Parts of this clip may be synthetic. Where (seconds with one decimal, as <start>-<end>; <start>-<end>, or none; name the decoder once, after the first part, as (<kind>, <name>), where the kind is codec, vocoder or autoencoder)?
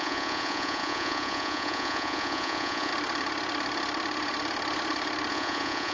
0.0-2.9 (vocoder, Vocos); 5.3-5.9